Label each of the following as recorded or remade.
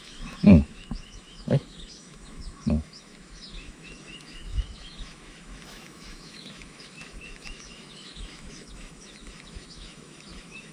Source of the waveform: remade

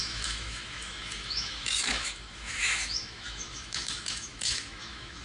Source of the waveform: remade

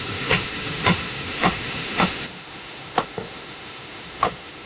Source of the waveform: remade